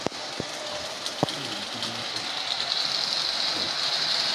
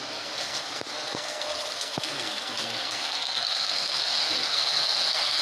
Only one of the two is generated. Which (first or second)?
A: second